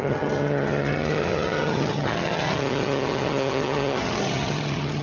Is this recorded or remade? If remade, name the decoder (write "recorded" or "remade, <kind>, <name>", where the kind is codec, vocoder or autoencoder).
remade, vocoder, HiFi-GAN